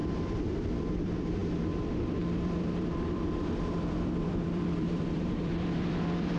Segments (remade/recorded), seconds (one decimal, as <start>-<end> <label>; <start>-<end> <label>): 0.0-6.4 remade